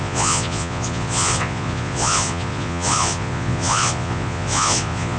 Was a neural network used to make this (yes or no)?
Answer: yes